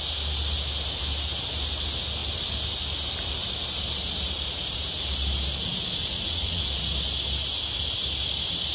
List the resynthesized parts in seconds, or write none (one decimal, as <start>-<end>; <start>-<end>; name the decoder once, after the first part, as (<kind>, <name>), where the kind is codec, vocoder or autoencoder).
6.0-6.6 (vocoder, Vocos)